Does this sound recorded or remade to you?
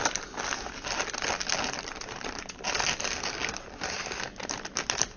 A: recorded